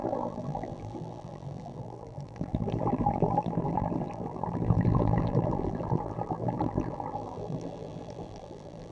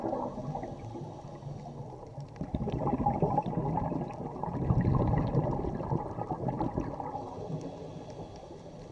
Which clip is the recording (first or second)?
second